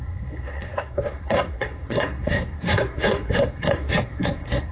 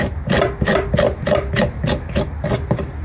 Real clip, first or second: second